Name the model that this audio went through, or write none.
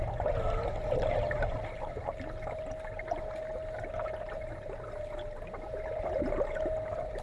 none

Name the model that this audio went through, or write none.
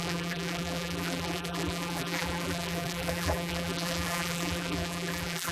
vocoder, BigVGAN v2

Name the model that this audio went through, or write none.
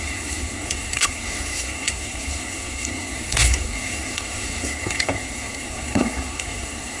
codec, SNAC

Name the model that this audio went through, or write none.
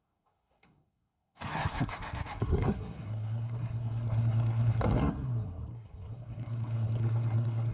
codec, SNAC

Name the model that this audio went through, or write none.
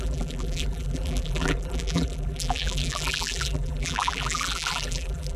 vocoder, BigVGAN v2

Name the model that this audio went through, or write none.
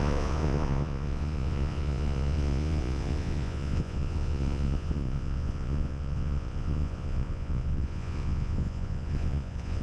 vocoder, Vocos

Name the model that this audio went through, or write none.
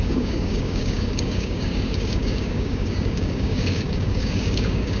codec, DAC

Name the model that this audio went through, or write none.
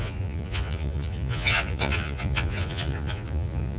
vocoder, Vocos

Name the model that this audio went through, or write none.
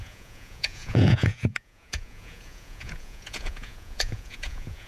vocoder, Vocos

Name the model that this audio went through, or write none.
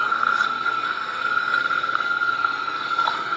codec, SNAC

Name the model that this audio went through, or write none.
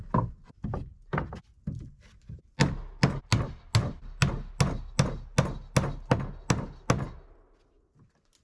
none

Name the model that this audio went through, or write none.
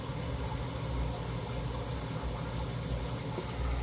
none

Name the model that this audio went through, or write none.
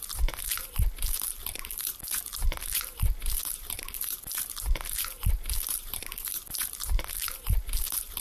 vocoder, BigVGAN v2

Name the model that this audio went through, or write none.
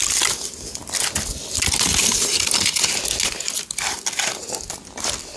none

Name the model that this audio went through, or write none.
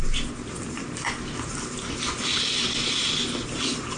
none